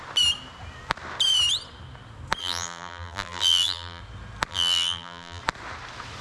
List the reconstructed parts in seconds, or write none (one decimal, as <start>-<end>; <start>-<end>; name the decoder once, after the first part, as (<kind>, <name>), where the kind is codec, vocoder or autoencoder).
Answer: 2.4-4.0 (vocoder, BigVGAN v2); 4.5-5.4